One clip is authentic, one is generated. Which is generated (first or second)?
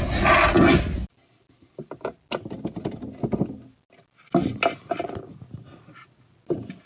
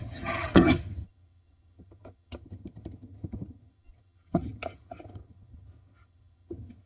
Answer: second